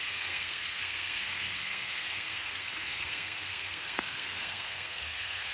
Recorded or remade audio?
remade